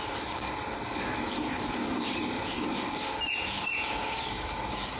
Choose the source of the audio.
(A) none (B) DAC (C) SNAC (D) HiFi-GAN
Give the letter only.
A